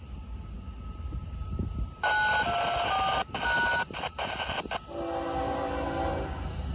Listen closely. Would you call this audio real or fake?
real